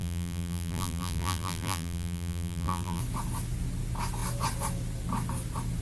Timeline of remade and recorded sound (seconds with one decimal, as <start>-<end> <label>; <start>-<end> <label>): 0.0-3.0 remade; 3.0-5.8 recorded